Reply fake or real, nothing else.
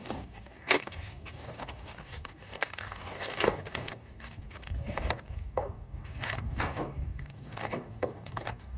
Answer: fake